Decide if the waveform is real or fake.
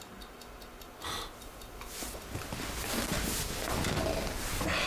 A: real